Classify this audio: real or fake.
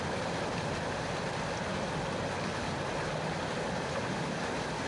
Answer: real